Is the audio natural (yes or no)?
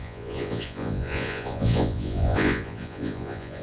no